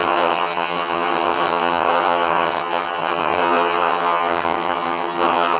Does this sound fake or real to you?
fake